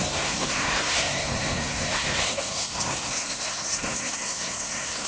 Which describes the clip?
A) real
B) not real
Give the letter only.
B